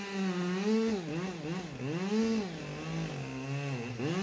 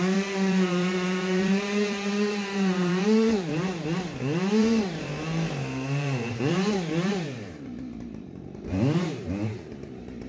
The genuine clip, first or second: first